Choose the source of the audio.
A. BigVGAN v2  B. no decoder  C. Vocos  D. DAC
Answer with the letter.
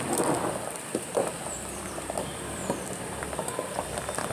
A